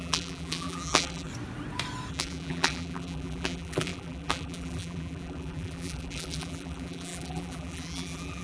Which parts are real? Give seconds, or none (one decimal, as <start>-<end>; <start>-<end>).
1.3-2.1